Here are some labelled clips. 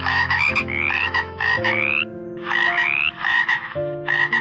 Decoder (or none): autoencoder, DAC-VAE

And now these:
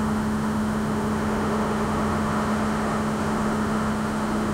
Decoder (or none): autoencoder, DAC-VAE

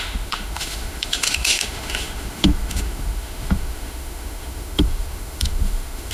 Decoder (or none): autoencoder, DAC-VAE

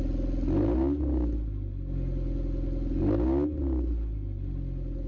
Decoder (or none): none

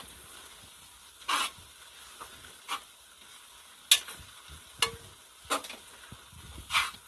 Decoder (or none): none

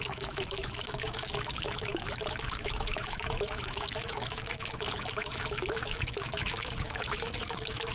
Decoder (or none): autoencoder, DAC-VAE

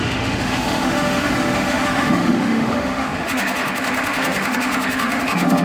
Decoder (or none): autoencoder, DAC-VAE